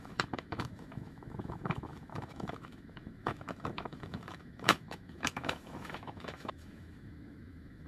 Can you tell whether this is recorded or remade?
remade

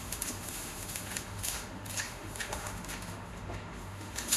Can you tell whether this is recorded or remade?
remade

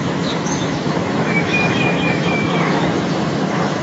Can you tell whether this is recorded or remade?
remade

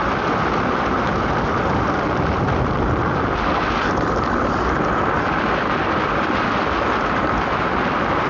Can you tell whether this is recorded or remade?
recorded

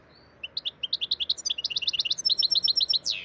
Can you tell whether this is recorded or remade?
recorded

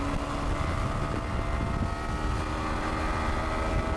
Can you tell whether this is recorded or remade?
recorded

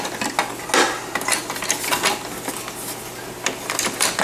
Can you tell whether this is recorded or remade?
recorded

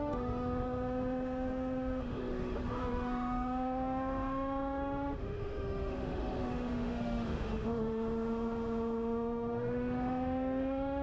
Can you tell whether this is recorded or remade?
remade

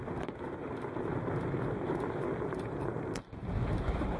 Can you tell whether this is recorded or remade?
recorded